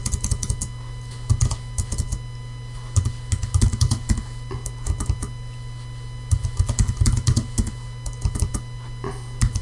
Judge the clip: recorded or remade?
recorded